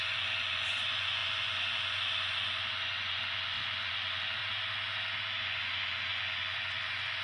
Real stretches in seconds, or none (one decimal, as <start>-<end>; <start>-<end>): 4.4-5.4